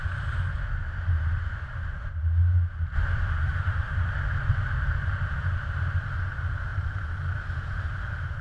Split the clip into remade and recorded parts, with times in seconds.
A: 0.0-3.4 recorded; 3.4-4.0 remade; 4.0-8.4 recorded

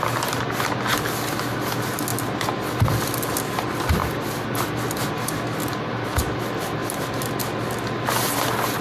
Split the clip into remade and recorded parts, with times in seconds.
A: 0.0-8.8 recorded

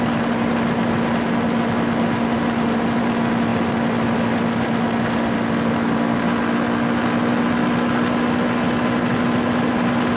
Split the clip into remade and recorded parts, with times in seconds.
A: 0.0-10.2 recorded

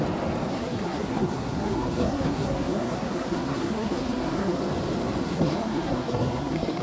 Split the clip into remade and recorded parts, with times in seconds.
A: 0.0-0.5 recorded; 0.5-4.6 remade; 4.6-5.2 recorded; 5.2-6.8 remade

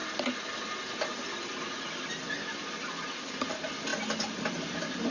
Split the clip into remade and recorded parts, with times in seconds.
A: 0.0-5.1 recorded